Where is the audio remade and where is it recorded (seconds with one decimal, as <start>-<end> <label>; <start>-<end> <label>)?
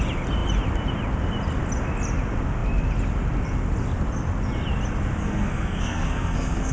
0.0-5.2 recorded; 5.2-6.7 remade